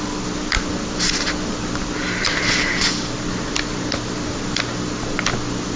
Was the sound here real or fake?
real